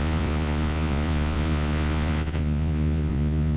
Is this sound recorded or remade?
remade